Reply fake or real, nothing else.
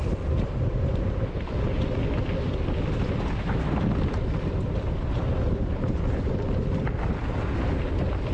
real